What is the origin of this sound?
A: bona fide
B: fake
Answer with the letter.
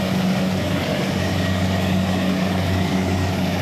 B